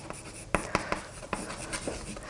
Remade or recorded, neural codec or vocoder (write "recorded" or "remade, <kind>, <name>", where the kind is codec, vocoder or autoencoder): recorded